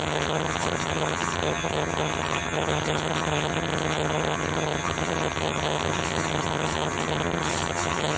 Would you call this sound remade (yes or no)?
yes